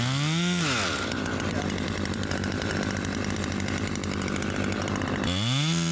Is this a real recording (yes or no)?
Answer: yes